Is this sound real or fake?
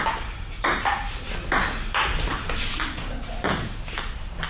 real